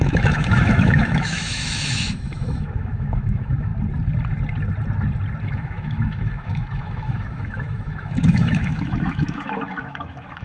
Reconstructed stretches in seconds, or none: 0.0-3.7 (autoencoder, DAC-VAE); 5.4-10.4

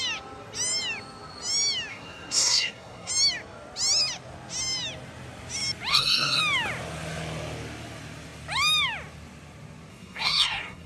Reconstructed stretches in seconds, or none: 1.9-3.1 (codec, SNAC); 5.9-6.4; 9.9-10.9

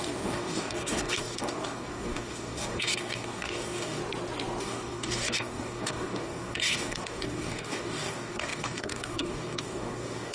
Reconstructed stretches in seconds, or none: 0.0-4.0 (codec, DAC); 4.6-10.3

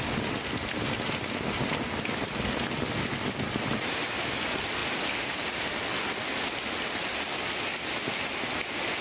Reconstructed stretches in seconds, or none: none

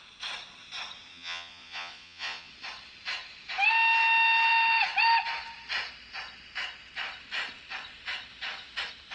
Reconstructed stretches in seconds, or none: 1.1-2.5 (vocoder, Vocos)

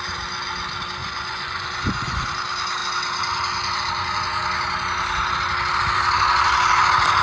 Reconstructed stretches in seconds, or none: 1.0-2.3 (vocoder, Vocos)

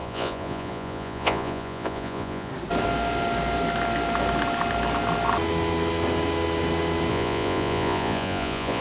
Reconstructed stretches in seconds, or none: 0.0-2.5 (vocoder, Vocos); 7.1-8.8